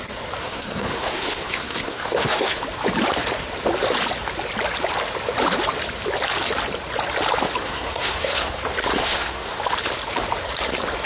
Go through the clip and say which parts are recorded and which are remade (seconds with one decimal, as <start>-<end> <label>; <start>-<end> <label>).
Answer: 0.0-0.4 recorded; 0.4-2.6 remade; 2.6-7.6 recorded; 7.6-8.6 remade; 8.6-9.0 recorded; 9.0-9.6 remade; 9.6-11.1 recorded